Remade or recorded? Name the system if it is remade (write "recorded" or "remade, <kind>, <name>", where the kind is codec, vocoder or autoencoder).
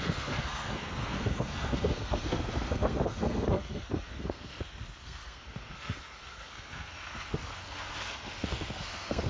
remade, codec, SNAC